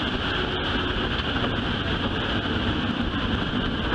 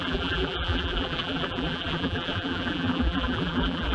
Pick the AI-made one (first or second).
second